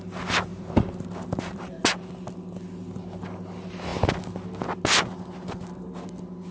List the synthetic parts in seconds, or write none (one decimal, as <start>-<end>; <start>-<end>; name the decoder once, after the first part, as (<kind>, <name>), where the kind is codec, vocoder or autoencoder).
0.5-1.8 (vocoder, BigVGAN v2)